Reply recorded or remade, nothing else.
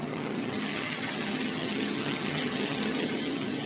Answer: remade